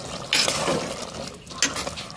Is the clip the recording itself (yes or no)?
yes